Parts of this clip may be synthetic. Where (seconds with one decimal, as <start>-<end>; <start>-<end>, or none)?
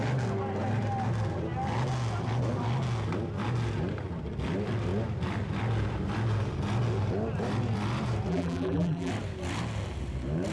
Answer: 8.3-9.1